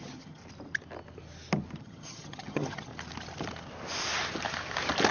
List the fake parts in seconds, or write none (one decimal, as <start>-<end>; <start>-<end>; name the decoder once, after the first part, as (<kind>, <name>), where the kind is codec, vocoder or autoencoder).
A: 0.0-0.4 (vocoder, HiFi-GAN); 1.8-2.9